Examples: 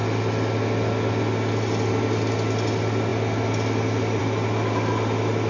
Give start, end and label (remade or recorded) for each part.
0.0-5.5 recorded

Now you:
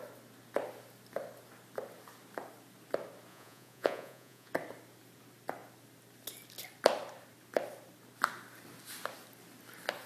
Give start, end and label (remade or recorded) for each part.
0.0-3.3 recorded; 3.3-4.5 remade; 4.5-10.1 recorded

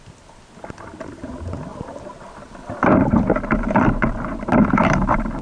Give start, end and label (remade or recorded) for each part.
0.0-5.4 recorded

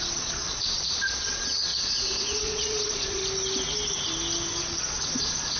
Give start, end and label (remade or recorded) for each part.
0.0-3.2 remade; 3.2-4.6 recorded; 4.6-5.6 remade

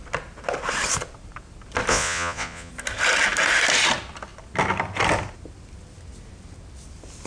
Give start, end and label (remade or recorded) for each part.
0.0-1.9 recorded; 1.9-2.7 remade; 2.7-7.3 recorded

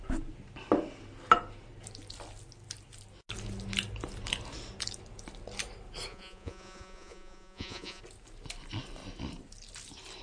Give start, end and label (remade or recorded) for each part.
0.0-6.1 recorded; 6.1-8.0 remade; 8.0-10.2 recorded

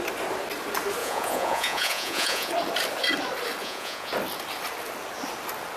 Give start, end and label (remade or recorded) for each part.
0.0-1.0 recorded; 1.0-2.5 remade; 2.5-3.6 recorded; 3.6-4.1 remade; 4.1-5.8 recorded